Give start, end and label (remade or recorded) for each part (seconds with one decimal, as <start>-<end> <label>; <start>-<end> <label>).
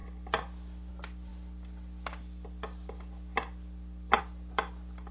0.0-5.1 recorded